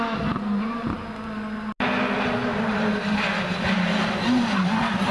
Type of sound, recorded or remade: recorded